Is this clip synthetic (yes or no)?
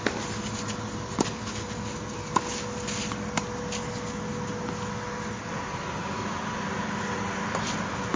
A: no